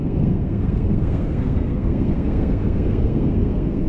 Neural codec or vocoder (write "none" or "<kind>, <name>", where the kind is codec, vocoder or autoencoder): codec, SNAC